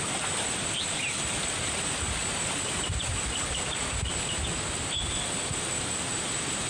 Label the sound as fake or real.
real